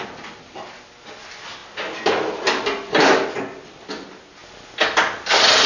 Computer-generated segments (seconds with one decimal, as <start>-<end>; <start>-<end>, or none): none